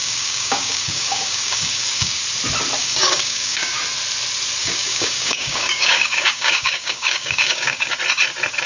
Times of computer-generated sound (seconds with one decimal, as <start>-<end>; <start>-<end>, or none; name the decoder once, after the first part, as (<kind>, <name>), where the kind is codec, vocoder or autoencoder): 0.0-2.2 (codec, DAC); 2.8-3.8; 4.6-7.9